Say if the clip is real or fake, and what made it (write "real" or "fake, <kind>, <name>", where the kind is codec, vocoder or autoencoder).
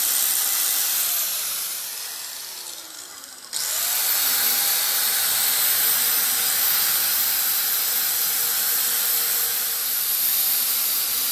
real